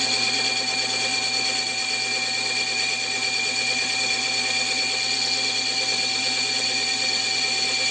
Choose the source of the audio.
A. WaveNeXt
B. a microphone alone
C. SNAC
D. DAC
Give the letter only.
B